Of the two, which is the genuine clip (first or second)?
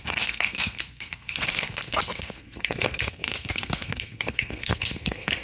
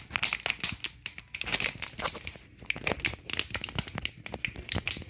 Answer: second